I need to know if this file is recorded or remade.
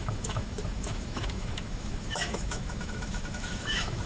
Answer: remade